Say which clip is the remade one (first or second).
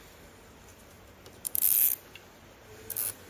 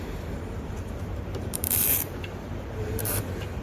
second